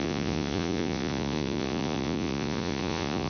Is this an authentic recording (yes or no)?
no